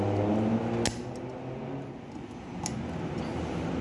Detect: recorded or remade recorded